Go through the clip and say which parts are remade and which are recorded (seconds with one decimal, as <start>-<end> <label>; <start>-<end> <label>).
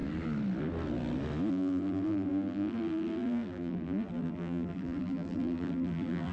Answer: 0.0-1.5 recorded; 1.5-6.3 remade